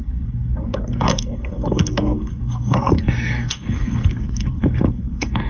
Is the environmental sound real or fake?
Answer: fake